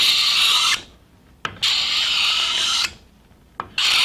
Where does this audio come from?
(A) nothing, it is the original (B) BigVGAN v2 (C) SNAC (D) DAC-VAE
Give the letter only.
A